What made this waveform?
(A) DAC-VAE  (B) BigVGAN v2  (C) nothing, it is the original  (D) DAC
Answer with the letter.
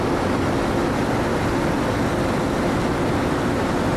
C